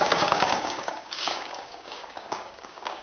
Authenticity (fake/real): fake